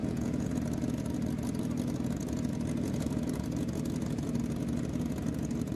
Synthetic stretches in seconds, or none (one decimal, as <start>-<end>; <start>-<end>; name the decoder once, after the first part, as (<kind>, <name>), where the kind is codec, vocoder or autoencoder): 0.0-0.5 (vocoder, Vocos)

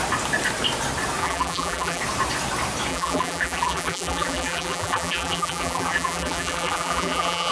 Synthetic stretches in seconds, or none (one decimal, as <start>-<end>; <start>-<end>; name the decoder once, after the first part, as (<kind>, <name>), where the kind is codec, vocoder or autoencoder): 1.2-2.0 (vocoder, BigVGAN v2); 2.9-7.5